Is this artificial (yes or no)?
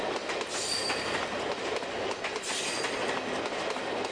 no